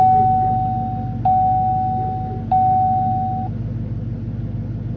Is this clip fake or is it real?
real